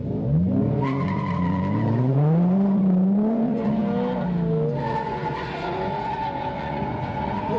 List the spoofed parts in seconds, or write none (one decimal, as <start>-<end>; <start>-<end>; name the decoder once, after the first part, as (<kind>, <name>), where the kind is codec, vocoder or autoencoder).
0.6-3.8 (vocoder, Vocos); 4.8-7.6